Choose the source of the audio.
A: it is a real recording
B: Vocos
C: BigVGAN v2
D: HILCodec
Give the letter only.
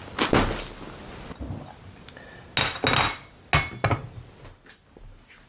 A